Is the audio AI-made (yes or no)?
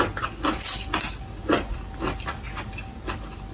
no